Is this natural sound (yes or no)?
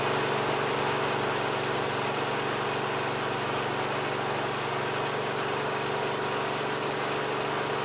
yes